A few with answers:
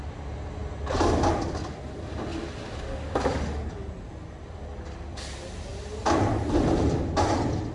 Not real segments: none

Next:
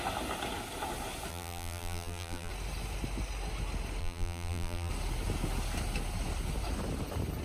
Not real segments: 1.3-2.5 (vocoder, BigVGAN v2); 4.0-4.9

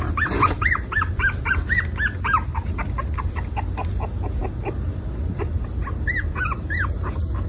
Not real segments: 0.0-1.5 (vocoder, BigVGAN v2); 2.5-3.3

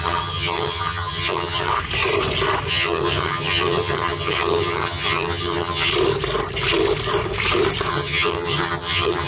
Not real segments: 0.0-1.7 (vocoder, HiFi-GAN); 2.7-5.9; 7.9-9.3

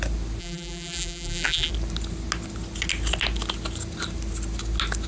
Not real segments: 0.4-1.7 (vocoder, BigVGAN v2)

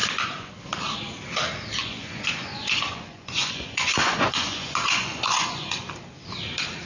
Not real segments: 0.0-0.5 (vocoder, Vocos); 1.8-5.9